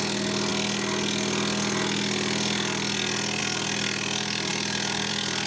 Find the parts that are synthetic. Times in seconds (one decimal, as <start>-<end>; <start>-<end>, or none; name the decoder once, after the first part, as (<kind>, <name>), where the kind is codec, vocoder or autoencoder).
none

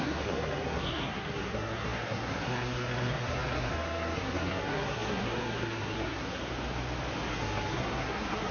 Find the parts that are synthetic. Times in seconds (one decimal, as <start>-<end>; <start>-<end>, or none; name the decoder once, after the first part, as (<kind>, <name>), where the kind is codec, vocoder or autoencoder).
0.0-6.4 (codec, SNAC); 7.3-8.5

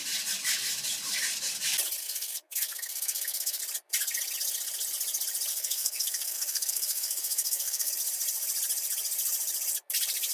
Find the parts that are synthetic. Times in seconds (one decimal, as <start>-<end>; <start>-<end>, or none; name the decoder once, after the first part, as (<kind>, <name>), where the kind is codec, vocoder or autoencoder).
2.0-3.6 (codec, SNAC); 5.5-7.9